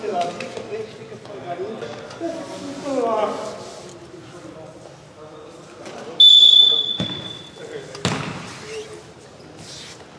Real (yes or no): yes